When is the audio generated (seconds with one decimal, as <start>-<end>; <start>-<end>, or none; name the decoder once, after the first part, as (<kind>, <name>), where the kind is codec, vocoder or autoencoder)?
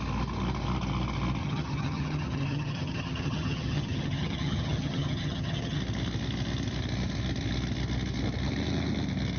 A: 1.4-5.8 (vocoder, HiFi-GAN)